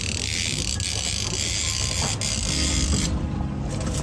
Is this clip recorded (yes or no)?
yes